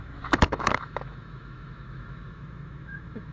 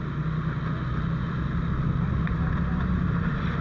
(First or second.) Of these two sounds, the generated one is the first